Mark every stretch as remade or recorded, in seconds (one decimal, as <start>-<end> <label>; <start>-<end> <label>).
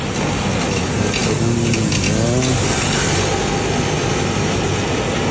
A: 0.0-5.3 recorded